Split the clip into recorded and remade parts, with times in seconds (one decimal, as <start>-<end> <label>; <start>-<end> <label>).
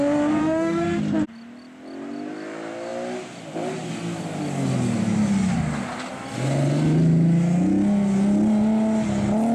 0.0-0.4 recorded; 0.4-1.0 remade; 1.0-9.5 recorded